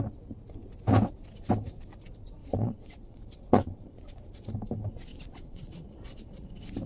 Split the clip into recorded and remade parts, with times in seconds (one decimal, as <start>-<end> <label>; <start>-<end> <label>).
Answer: 0.0-2.4 recorded; 2.4-4.5 remade; 4.5-5.1 recorded; 5.1-6.5 remade; 6.5-6.9 recorded

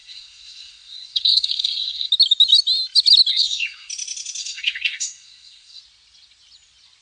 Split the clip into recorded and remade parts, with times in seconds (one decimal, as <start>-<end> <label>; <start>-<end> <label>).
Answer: 0.0-2.1 remade; 2.1-3.3 recorded; 3.3-3.9 remade; 3.9-4.4 recorded; 4.4-5.8 remade; 5.8-7.0 recorded

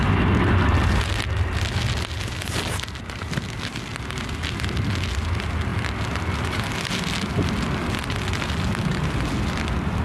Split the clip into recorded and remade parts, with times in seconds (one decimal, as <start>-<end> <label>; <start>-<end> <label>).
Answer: 0.0-10.0 recorded

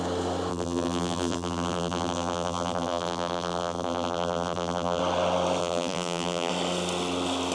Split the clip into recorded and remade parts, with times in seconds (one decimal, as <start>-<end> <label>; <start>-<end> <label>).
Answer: 0.0-0.5 recorded; 0.5-5.0 remade; 5.0-5.6 recorded; 5.6-6.5 remade; 6.5-7.5 recorded

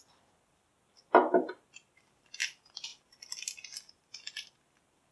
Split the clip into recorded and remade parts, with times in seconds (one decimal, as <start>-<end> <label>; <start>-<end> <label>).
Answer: 0.0-5.1 recorded

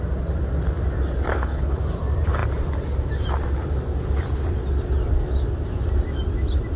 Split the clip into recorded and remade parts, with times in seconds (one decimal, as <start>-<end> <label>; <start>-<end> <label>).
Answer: 0.0-1.3 recorded; 1.3-1.8 remade; 1.8-6.8 recorded

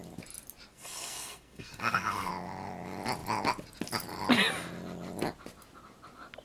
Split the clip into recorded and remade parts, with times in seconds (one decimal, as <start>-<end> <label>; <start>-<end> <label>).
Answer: 0.0-0.7 recorded; 0.7-2.3 remade; 2.3-6.4 recorded